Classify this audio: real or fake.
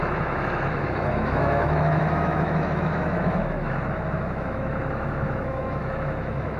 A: fake